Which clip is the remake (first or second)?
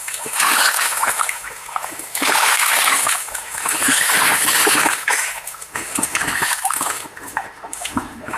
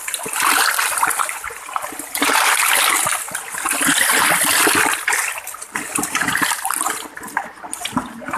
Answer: first